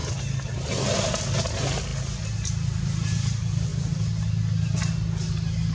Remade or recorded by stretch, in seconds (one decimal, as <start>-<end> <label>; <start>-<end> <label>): 0.0-5.7 recorded